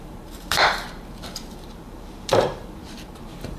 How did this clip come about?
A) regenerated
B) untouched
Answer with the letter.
A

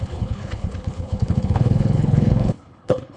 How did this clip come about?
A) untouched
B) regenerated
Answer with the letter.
B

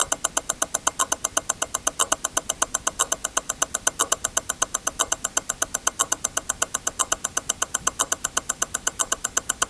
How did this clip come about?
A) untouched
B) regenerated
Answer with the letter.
A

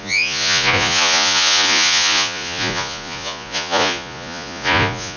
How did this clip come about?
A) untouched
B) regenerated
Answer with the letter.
B